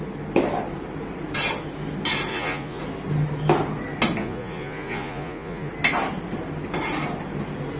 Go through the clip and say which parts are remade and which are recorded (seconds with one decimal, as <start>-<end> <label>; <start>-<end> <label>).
0.0-2.3 recorded; 2.3-2.8 remade; 2.8-4.2 recorded; 4.2-5.7 remade; 5.7-7.8 recorded